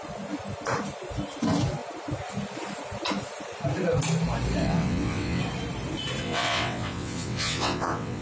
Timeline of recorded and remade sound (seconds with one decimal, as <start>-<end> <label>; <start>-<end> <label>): 0.0-4.6 recorded; 4.6-5.4 remade; 5.4-6.2 recorded; 6.2-8.2 remade